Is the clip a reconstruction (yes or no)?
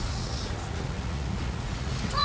yes